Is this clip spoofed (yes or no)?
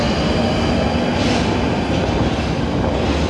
no